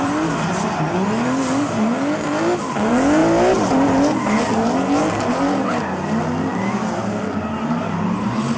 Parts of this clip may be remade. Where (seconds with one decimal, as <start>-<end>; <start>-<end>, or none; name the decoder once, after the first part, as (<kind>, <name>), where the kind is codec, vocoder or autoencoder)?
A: none